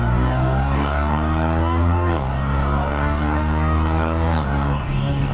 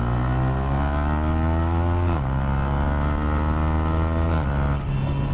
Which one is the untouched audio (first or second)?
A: second